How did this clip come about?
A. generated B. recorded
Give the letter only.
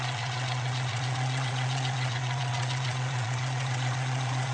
A